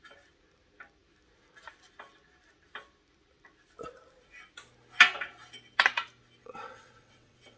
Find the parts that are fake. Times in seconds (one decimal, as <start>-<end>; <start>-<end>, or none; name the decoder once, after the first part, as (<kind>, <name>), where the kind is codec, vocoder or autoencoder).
6.4-7.6 (vocoder, WaveNeXt)